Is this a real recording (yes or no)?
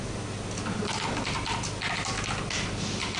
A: yes